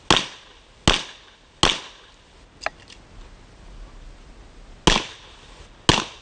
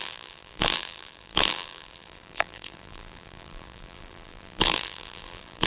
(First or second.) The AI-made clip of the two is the second